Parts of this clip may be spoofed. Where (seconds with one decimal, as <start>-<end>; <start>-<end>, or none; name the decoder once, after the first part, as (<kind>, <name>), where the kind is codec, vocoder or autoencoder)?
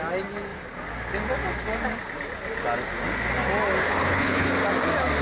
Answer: 3.8-4.5 (codec, HILCodec)